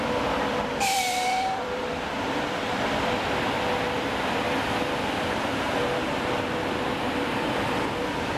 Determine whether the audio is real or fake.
fake